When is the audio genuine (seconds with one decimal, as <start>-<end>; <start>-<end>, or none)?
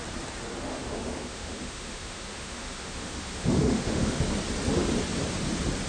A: 0.0-0.7; 4.2-5.9